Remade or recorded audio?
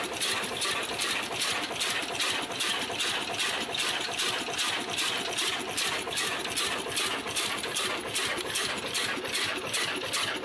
recorded